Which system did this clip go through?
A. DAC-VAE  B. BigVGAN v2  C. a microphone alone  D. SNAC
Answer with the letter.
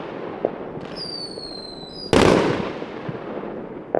C